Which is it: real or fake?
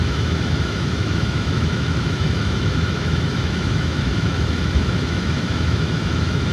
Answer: fake